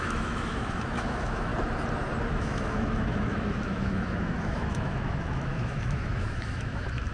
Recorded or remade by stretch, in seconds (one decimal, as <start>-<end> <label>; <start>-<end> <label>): 0.0-1.5 remade; 1.5-2.3 recorded; 2.3-7.1 remade